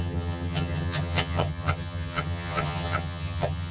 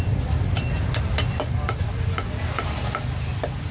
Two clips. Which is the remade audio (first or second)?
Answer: first